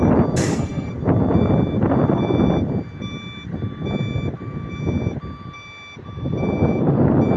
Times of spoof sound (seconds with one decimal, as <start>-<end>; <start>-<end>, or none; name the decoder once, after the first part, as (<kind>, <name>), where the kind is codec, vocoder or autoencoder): 0.4-0.9 (codec, SNAC)